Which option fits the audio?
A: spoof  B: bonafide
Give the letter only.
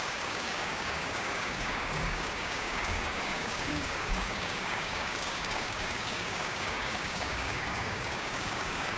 A